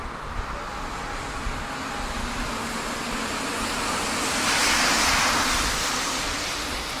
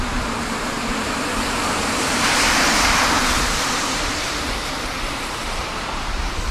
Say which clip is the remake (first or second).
second